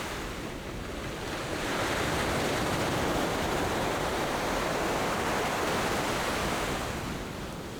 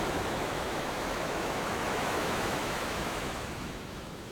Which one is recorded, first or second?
first